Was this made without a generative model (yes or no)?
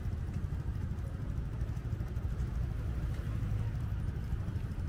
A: no